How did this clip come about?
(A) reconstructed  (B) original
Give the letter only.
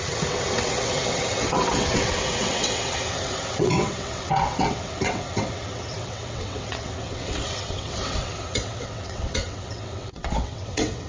A